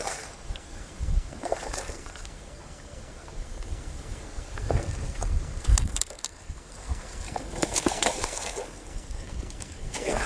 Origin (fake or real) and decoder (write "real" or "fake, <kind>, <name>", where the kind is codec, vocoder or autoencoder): fake, codec, SNAC